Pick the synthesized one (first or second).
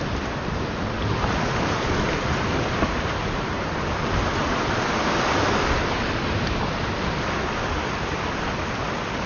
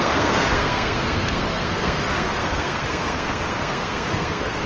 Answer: second